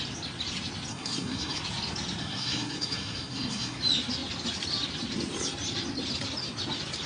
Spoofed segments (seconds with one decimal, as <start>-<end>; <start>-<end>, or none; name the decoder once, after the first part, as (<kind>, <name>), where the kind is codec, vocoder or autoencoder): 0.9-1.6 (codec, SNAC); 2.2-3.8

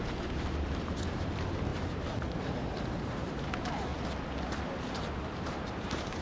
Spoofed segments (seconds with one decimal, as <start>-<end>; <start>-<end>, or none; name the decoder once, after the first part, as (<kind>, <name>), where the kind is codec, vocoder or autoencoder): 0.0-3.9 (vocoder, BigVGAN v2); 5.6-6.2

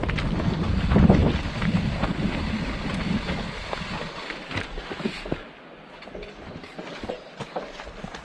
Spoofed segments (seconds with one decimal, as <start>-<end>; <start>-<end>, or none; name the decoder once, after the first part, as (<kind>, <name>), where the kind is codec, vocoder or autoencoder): none

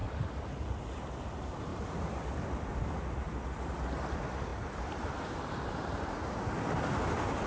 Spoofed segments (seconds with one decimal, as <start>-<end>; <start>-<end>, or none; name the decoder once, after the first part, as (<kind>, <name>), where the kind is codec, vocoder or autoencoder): 1.7-2.8 (vocoder, BigVGAN v2); 4.5-6.4